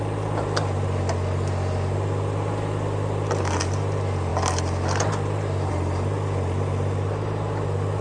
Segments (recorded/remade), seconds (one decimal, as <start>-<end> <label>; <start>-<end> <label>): 0.0-8.0 recorded